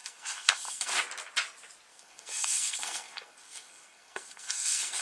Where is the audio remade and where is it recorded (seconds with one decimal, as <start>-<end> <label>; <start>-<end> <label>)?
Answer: 0.0-0.9 remade; 0.9-1.9 recorded; 1.9-5.0 remade